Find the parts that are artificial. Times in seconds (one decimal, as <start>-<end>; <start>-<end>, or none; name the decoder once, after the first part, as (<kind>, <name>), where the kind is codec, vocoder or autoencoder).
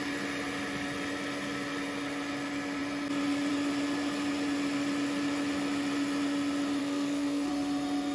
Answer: 6.8-7.5 (codec, SNAC)